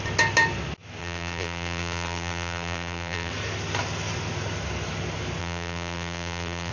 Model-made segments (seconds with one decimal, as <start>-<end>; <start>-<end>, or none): 1.0-3.3; 5.4-6.7